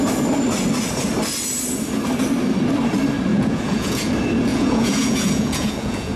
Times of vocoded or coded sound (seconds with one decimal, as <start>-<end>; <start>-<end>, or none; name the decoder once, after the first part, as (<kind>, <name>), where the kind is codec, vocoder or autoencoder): 3.3-4.1 (vocoder, Vocos); 4.5-6.2